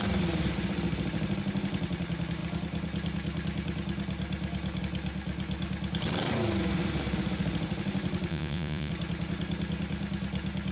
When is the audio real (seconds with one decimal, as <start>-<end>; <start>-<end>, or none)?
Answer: 0.0-8.3; 8.9-10.7